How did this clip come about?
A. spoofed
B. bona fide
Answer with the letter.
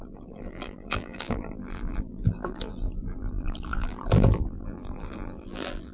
A